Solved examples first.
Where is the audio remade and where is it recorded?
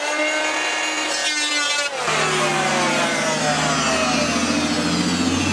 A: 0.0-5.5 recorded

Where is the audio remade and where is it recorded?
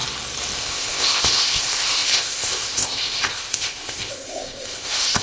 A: 0.0-0.6 recorded; 0.6-5.2 remade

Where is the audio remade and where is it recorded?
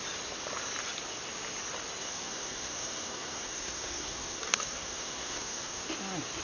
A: 0.0-2.0 recorded; 2.0-5.8 remade; 5.8-6.4 recorded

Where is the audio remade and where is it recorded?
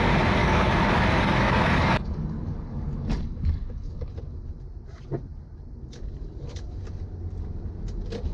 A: 0.0-0.4 recorded; 0.4-4.1 remade; 4.1-8.3 recorded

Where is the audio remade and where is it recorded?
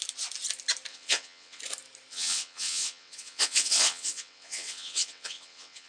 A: 0.0-0.9 recorded; 0.9-1.6 remade; 1.6-2.1 recorded; 2.1-5.9 remade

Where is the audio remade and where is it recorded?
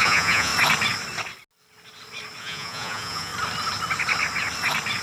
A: 0.0-0.5 remade; 0.5-2.4 recorded; 2.4-3.3 remade; 3.3-5.0 recorded